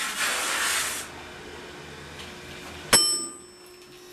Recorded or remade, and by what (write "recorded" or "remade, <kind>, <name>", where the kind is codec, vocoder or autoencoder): recorded